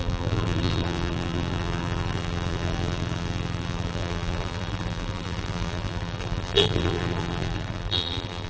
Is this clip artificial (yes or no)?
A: yes